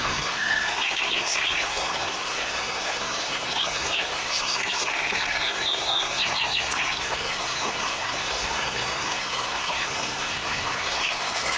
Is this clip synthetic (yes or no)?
yes